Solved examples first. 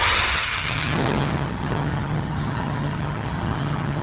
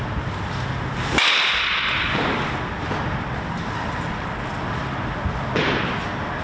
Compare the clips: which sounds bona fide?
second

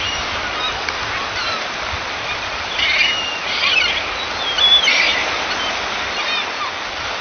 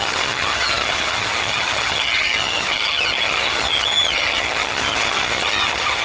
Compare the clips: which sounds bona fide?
first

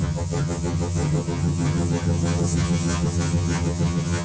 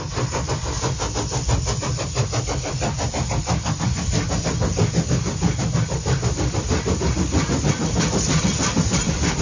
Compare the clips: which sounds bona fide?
second